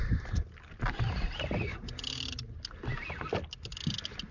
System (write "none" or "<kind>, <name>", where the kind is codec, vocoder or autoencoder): none